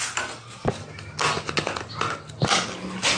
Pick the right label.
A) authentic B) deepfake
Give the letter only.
A